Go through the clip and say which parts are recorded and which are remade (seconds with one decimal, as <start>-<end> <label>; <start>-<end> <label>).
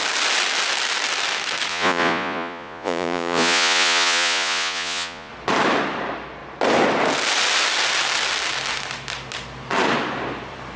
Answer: 0.0-1.7 recorded; 1.7-5.3 remade; 5.3-10.8 recorded